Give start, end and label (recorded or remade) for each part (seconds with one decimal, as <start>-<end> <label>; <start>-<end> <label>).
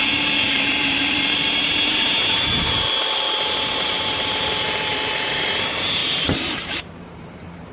0.0-4.9 remade; 4.9-5.6 recorded; 5.6-7.7 remade